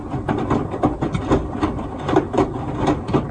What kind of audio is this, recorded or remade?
recorded